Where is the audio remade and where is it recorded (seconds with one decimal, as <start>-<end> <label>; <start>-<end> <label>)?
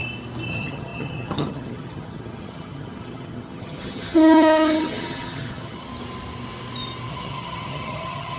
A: 0.0-0.5 recorded; 0.5-5.9 remade; 5.9-7.1 recorded; 7.1-8.4 remade